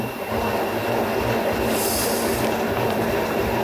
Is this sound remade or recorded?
recorded